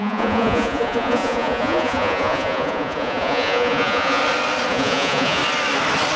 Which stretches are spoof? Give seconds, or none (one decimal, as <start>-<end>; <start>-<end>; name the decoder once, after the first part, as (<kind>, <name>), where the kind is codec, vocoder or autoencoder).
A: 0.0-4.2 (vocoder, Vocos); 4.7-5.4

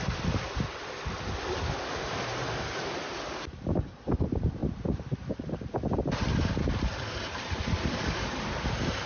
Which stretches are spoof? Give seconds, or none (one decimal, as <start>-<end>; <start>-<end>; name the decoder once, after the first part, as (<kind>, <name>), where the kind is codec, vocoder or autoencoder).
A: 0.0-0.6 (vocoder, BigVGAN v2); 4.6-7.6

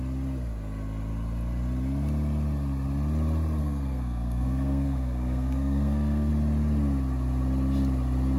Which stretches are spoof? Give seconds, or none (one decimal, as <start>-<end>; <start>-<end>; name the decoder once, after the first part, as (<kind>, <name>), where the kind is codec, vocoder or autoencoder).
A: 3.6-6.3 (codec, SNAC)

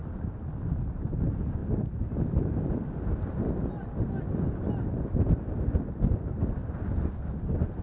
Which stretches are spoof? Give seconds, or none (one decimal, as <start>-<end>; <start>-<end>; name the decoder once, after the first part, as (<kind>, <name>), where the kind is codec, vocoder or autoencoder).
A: 0.0-0.9 (vocoder, BigVGAN v2); 1.6-4.7; 6.6-7.2

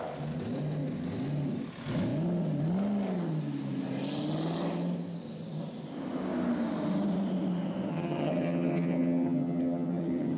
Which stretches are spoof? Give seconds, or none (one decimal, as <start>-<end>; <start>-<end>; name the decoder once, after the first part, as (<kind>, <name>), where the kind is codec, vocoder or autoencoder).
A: 7.9-10.4 (vocoder, HiFi-GAN)

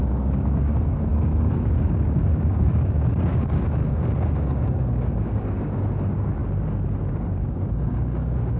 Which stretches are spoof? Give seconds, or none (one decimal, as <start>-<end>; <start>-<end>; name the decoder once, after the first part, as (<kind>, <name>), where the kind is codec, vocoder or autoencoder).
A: 0.0-6.4 (codec, DAC); 7.1-8.6

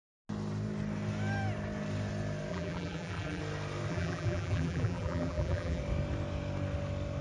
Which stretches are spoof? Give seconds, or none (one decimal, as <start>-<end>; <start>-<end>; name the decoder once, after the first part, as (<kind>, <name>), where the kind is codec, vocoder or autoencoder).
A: 2.5-3.4 (vocoder, BigVGAN v2); 3.9-5.8

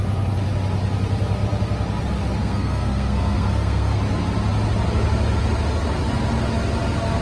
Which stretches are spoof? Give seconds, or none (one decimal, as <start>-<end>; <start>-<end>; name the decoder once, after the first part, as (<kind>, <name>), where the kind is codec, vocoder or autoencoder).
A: 2.4-4.0 (codec, SNAC)